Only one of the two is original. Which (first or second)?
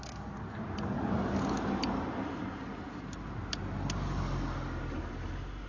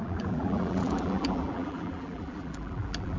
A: first